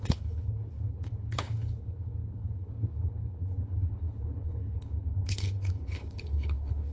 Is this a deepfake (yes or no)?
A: yes